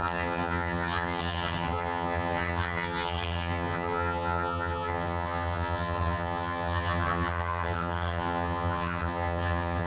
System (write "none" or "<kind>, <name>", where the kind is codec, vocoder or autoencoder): vocoder, HiFi-GAN